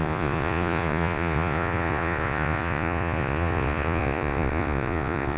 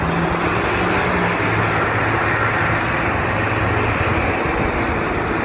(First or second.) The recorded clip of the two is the second